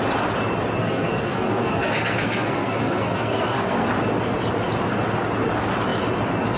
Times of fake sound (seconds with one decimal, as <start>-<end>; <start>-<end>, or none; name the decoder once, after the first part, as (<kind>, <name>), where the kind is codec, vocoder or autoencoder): 0.8-3.9 (codec, SNAC)

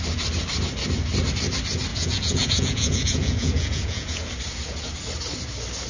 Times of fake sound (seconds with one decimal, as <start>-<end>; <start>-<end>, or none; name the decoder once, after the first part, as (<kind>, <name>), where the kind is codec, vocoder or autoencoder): 1.9-4.3 (vocoder, Vocos)

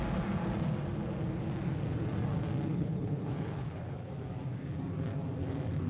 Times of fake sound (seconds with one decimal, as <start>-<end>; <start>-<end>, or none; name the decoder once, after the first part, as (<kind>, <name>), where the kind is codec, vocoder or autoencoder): 2.7-4.1 (codec, HILCodec)

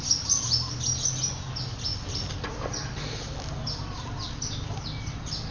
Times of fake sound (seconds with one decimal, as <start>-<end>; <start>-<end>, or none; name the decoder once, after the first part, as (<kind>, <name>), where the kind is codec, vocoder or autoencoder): none

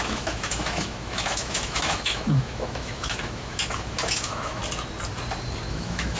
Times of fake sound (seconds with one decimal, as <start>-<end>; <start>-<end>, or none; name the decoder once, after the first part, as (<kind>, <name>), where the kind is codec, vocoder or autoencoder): 0.0-4.6 (autoencoder, DAC-VAE); 5.7-6.2

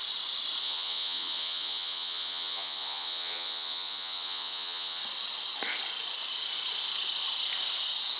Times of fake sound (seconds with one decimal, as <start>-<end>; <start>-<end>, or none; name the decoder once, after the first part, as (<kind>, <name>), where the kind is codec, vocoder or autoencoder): 0.6-5.0 (vocoder, Vocos)

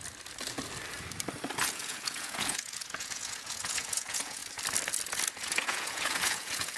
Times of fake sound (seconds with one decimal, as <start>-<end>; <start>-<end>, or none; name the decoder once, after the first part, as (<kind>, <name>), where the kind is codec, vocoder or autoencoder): 1.6-4.4 (vocoder, Vocos); 5.3-6.8